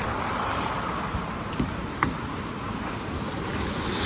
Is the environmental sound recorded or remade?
remade